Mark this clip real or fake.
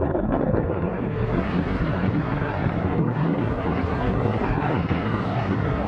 fake